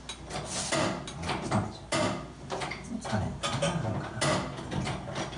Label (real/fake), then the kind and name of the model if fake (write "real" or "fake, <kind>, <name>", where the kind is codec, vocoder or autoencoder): real